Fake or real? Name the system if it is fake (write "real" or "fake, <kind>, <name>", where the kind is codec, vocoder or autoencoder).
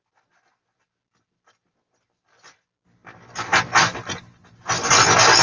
real